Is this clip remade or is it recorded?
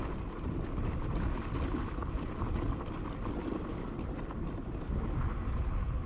recorded